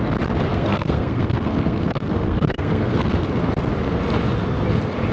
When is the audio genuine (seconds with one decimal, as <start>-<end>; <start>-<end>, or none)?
0.0-0.5; 3.1-5.1